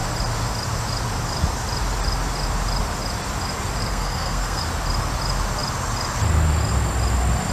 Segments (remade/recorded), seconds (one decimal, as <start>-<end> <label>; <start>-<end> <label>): 0.0-3.8 recorded; 3.8-4.6 remade; 4.6-7.5 recorded